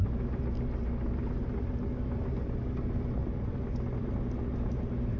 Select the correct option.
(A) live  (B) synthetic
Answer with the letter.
A